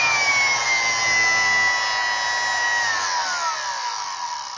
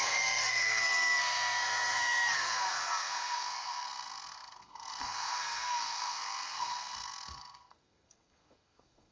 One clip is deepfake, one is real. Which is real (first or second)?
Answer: first